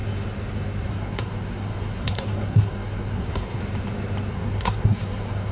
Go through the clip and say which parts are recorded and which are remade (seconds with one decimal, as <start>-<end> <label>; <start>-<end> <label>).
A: 0.0-0.9 recorded; 0.9-3.6 remade; 3.6-4.3 recorded; 4.3-5.5 remade